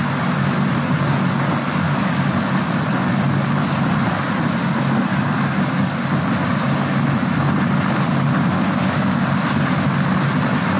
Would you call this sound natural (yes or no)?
yes